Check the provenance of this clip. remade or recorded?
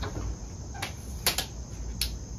recorded